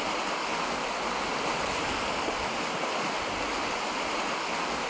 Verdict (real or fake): real